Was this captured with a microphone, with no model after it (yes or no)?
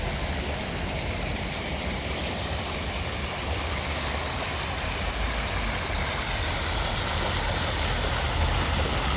yes